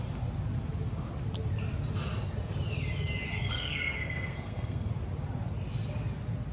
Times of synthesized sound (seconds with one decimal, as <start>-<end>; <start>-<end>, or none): 3.5-4.9